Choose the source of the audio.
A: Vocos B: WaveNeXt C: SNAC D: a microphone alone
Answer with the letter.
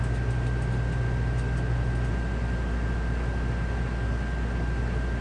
D